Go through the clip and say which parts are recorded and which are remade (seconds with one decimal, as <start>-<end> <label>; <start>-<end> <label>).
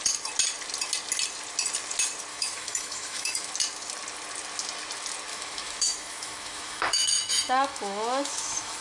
0.0-2.3 recorded; 2.3-3.5 remade; 3.5-5.3 recorded; 5.3-8.8 remade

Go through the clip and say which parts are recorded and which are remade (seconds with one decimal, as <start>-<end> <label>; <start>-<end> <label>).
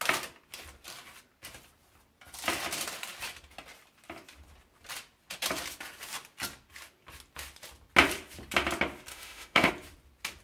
0.0-9.1 recorded; 9.1-9.7 remade; 9.7-10.4 recorded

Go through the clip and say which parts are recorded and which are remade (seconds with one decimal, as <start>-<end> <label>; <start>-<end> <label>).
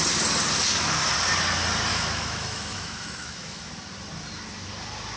0.0-1.9 recorded; 1.9-3.7 remade; 3.7-5.2 recorded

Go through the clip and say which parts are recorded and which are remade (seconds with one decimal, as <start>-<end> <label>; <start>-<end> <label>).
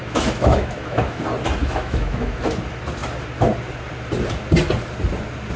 0.0-1.2 remade; 1.2-1.6 recorded; 1.6-2.4 remade; 2.4-5.6 recorded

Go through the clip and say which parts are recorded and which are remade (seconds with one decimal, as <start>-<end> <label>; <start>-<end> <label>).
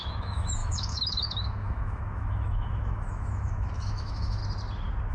0.0-4.4 remade; 4.4-5.1 recorded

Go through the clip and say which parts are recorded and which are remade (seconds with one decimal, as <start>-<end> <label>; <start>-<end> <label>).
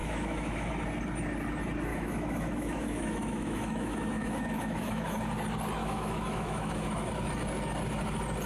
0.0-0.7 remade; 0.7-1.9 recorded; 1.9-5.3 remade; 5.3-5.8 recorded; 5.8-7.1 remade; 7.1-8.5 recorded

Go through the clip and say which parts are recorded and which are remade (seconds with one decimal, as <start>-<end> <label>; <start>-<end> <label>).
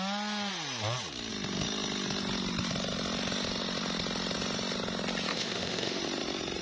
0.0-5.3 recorded; 5.3-6.0 remade; 6.0-6.6 recorded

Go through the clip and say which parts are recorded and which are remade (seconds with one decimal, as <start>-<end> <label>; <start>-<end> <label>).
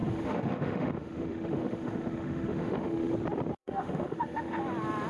0.0-3.1 remade; 3.1-3.6 recorded; 3.6-4.6 remade; 4.6-5.1 recorded